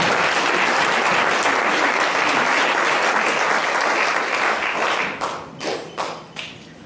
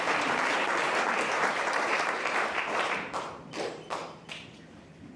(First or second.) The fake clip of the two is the second